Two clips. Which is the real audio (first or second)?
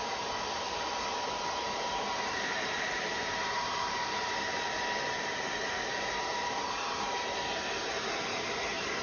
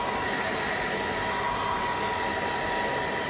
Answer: second